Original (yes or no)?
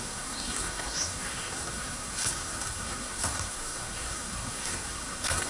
no